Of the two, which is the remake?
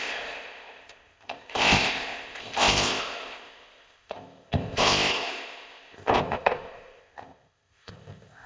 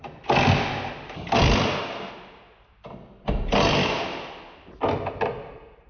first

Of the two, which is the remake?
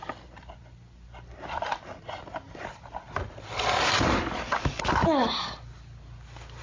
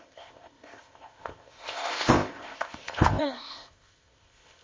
second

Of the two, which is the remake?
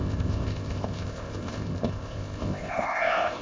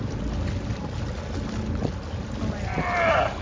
first